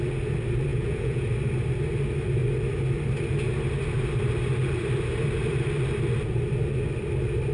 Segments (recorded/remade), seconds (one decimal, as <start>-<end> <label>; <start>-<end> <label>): 0.0-0.7 recorded; 0.7-1.3 remade; 1.3-7.5 recorded